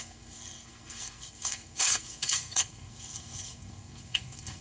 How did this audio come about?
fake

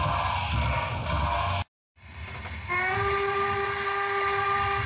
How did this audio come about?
real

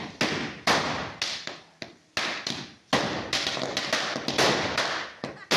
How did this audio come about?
real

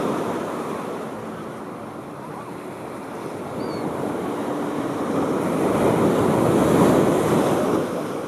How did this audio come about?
real